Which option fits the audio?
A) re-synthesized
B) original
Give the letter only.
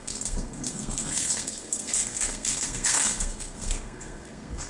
A